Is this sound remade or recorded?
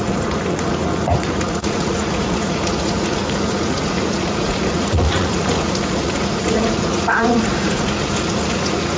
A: remade